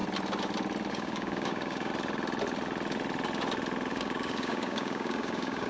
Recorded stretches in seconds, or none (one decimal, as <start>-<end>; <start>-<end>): 0.0-0.9; 1.9-3.9